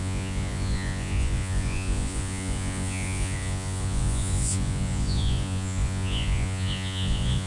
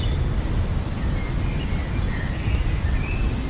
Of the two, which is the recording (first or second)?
second